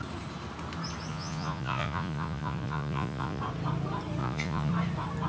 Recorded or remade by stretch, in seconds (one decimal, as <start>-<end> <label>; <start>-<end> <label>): 0.0-1.1 recorded; 1.1-3.4 remade; 3.4-4.2 recorded; 4.2-4.7 remade; 4.7-5.3 recorded